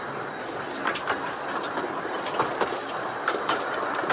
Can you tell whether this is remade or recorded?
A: recorded